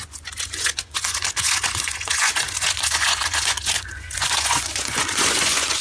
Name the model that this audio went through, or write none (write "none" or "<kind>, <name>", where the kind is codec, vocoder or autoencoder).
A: vocoder, Vocos